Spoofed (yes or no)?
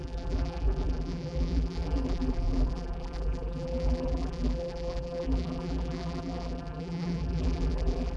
yes